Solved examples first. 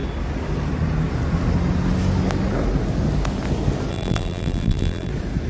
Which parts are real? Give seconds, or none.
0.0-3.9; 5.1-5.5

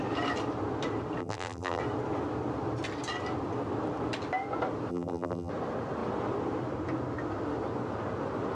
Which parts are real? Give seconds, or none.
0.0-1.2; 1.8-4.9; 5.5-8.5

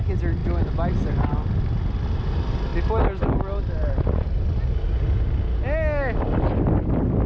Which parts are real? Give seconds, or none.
0.0-7.3

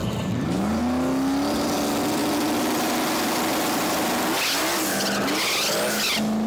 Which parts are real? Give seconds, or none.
0.8-6.5

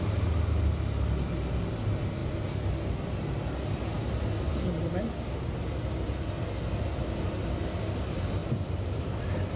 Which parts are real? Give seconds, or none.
0.0-8.4; 9.0-9.6

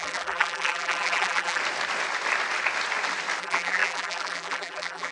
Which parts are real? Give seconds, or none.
1.6-3.4

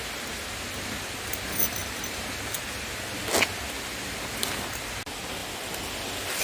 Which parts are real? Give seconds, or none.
0.0-6.4

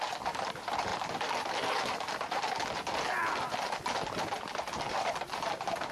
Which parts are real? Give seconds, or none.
0.0-5.9